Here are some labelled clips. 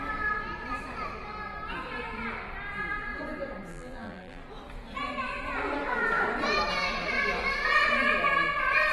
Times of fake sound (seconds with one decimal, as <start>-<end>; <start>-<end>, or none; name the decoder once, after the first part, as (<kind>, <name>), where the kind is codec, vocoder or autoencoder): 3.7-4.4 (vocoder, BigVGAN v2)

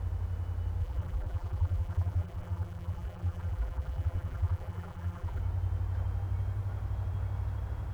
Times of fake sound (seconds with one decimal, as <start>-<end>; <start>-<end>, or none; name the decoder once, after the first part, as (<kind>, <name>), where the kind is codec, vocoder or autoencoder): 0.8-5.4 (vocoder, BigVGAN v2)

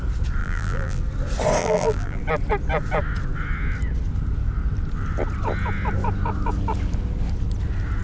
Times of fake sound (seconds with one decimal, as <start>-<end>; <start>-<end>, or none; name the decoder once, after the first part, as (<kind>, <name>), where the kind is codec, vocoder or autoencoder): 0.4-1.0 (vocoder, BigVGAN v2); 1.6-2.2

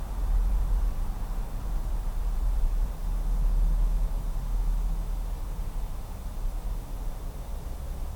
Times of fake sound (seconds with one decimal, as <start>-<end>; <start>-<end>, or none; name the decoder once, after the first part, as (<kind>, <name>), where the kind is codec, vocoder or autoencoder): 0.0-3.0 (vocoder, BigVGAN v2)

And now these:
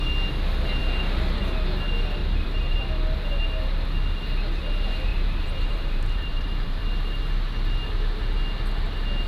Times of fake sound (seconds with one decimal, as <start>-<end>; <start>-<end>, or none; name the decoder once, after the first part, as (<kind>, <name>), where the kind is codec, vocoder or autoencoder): 2.2-2.8 (vocoder, BigVGAN v2); 5.1-6.8